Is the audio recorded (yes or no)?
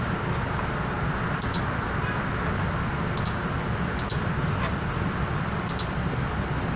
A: yes